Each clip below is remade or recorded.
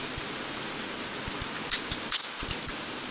recorded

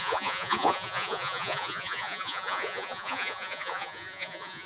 remade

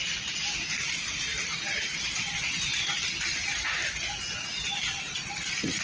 recorded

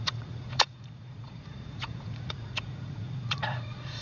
remade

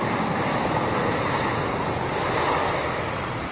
recorded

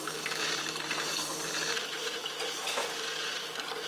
remade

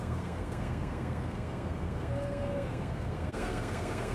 remade